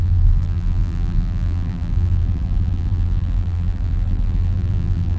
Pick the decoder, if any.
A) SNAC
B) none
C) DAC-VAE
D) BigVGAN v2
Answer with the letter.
D